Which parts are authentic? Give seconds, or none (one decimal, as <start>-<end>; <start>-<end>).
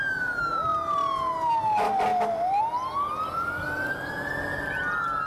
0.0-5.3